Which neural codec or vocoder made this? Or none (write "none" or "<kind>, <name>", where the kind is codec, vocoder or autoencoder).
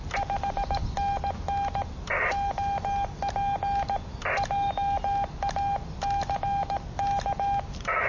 none